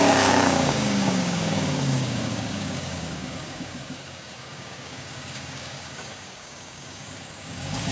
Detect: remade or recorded remade